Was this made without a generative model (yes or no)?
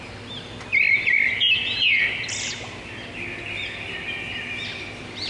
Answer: yes